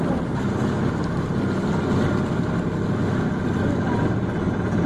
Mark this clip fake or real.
real